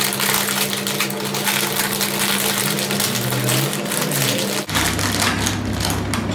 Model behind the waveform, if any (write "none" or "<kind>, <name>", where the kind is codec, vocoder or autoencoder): none